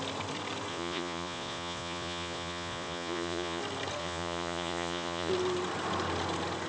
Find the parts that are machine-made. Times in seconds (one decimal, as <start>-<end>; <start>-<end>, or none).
0.7-3.6; 4.0-5.3